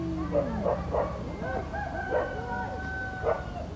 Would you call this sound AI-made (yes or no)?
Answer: no